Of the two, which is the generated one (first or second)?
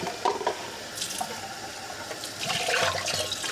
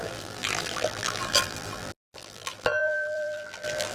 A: second